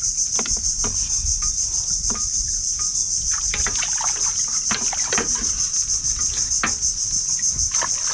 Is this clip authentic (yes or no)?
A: yes